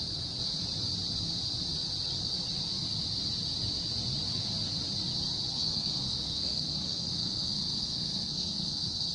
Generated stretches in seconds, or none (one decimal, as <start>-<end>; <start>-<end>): 5.5-9.1